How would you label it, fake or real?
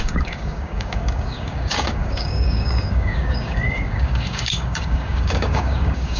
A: fake